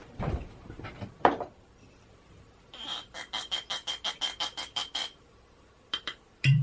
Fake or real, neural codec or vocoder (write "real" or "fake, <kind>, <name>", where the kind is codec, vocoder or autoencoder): fake, vocoder, BigVGAN v2